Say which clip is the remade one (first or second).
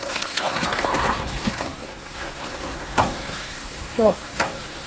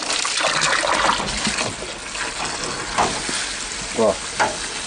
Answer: first